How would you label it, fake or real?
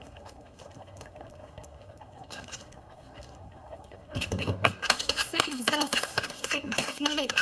fake